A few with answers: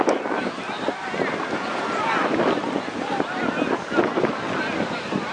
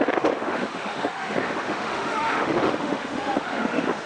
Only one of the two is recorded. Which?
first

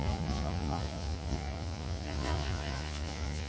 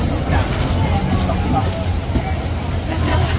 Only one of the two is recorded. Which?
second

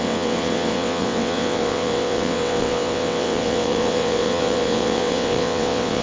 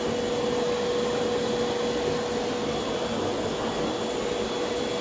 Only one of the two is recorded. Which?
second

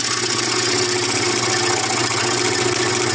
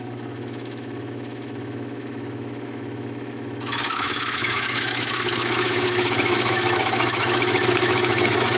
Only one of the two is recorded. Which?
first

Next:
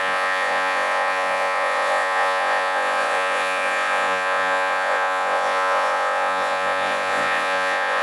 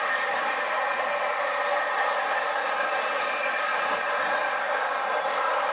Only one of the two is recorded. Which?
second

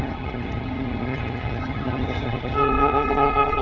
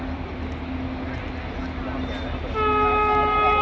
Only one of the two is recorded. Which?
second